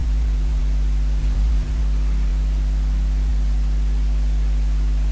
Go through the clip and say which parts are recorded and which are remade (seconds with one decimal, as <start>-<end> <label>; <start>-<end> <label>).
0.0-0.6 remade; 0.6-1.2 recorded; 1.2-1.8 remade; 1.8-5.1 recorded